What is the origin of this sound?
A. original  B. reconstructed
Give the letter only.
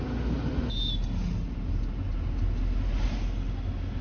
A